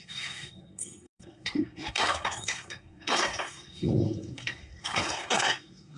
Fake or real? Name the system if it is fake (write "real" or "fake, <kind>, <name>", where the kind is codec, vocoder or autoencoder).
fake, codec, SNAC